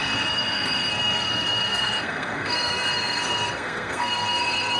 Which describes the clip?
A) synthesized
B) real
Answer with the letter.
A